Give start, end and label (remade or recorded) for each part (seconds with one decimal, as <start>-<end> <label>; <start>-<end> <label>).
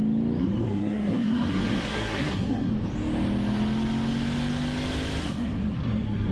0.0-0.4 recorded; 0.4-2.7 remade; 2.7-5.2 recorded; 5.2-6.3 remade